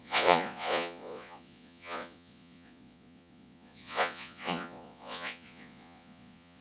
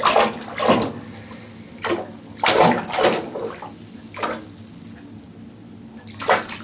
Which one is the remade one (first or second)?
first